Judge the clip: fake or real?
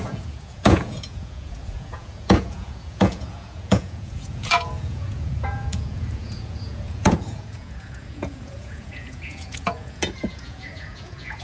fake